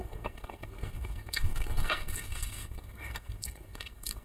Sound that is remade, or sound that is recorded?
remade